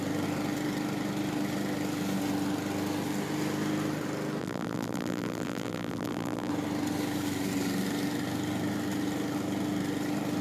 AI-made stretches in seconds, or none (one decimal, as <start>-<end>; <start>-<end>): 4.4-6.5